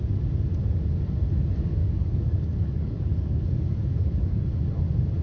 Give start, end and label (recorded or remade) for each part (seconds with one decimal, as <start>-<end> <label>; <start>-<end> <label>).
0.0-1.8 recorded; 1.8-4.5 remade; 4.5-5.2 recorded

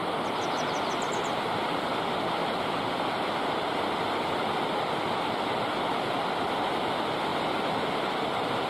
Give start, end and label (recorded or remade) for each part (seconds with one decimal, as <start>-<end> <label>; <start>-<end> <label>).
0.0-0.9 recorded; 0.9-8.7 remade

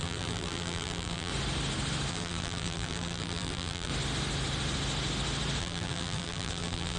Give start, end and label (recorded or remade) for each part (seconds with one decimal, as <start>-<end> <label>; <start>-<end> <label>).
0.0-1.3 remade; 1.3-2.1 recorded; 2.1-3.9 remade; 3.9-5.6 recorded; 5.6-7.0 remade

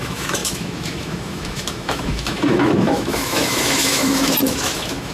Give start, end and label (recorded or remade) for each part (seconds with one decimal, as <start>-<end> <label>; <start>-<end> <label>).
0.0-5.1 remade

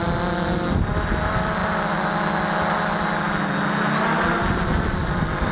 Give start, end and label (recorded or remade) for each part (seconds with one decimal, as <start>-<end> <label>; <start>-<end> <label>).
0.0-5.5 recorded

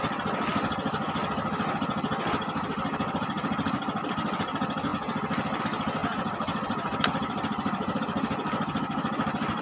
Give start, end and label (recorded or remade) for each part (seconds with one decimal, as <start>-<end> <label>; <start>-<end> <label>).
0.0-6.0 recorded; 6.0-8.0 remade; 8.0-9.6 recorded

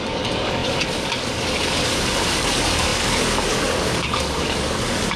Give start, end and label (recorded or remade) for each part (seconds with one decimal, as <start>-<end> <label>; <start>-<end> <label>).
0.0-5.2 remade